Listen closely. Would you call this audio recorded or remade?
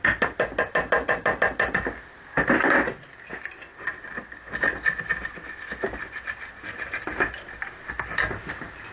recorded